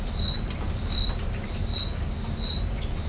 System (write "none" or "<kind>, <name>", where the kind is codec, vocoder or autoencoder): none